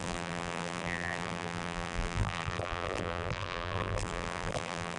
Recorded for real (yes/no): no